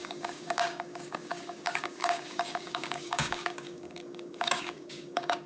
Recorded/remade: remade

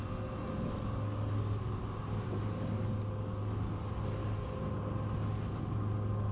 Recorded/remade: recorded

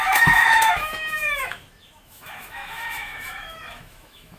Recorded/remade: remade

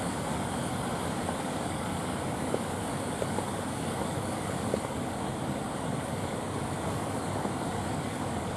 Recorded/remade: remade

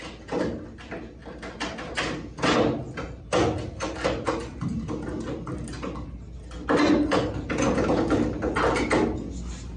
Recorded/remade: recorded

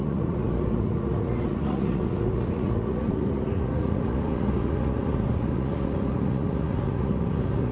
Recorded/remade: remade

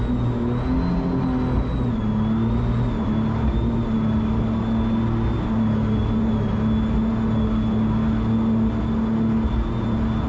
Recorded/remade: recorded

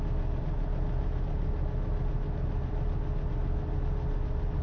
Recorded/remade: recorded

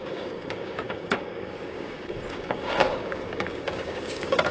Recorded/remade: remade